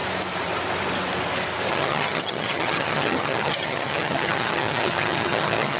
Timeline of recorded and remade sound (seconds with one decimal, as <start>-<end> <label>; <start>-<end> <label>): 0.0-1.7 recorded; 1.7-5.8 remade